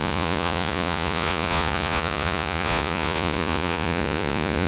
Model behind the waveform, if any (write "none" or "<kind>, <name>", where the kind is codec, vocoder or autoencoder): vocoder, Vocos